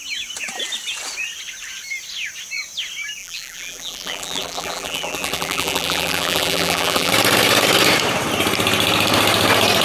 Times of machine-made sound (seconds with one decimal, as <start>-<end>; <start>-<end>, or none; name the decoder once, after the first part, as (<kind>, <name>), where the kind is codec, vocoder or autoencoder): 3.2-7.1 (vocoder, BigVGAN v2)